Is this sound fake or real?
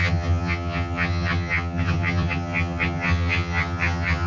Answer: fake